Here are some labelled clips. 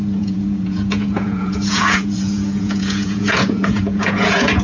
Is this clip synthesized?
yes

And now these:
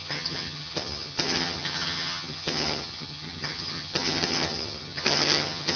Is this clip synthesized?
yes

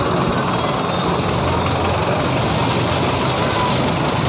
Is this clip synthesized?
no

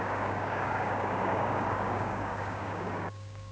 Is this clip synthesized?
yes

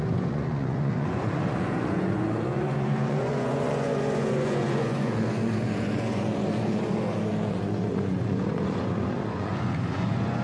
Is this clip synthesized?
yes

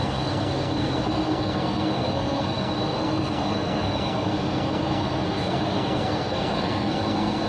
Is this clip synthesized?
yes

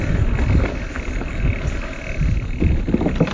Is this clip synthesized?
no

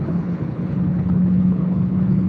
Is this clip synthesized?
yes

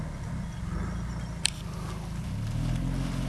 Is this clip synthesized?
no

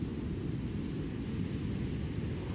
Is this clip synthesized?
no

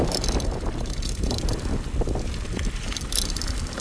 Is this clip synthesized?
yes